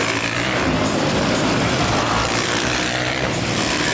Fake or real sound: fake